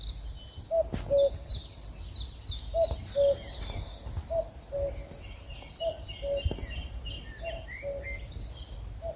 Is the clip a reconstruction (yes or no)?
no